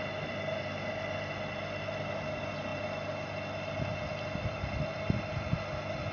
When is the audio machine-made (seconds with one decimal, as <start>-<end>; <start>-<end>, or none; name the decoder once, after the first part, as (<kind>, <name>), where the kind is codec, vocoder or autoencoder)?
none